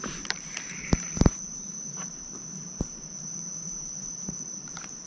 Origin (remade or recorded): remade